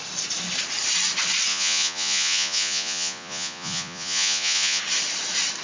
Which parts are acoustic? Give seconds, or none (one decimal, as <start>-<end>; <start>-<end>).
0.0-1.5; 4.8-5.6